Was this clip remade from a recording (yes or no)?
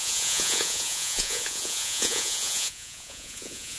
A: yes